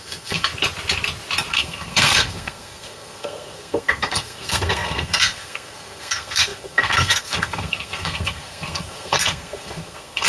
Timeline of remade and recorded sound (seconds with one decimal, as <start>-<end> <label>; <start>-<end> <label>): 0.0-0.5 remade; 0.5-1.5 recorded; 1.5-10.3 remade